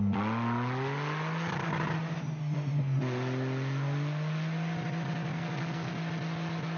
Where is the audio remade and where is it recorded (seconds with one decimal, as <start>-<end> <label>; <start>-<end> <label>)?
0.0-5.3 recorded; 5.3-5.9 remade; 5.9-6.8 recorded